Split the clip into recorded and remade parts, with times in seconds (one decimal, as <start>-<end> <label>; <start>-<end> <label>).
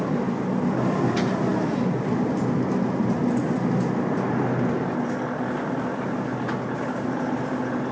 0.0-7.9 recorded